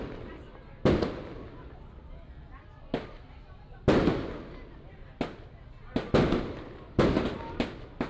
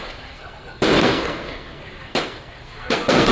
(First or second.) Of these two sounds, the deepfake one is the second